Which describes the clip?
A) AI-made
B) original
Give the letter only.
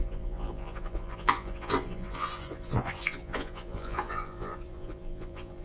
A